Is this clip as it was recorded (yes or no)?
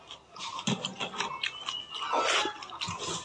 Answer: yes